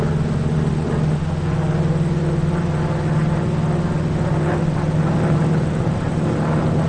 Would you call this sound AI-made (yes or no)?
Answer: no